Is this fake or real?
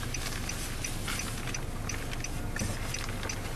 real